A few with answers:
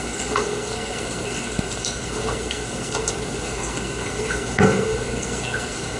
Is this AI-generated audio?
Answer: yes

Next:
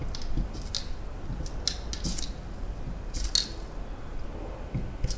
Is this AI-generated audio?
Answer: no